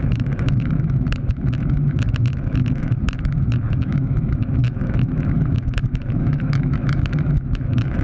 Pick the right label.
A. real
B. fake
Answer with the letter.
B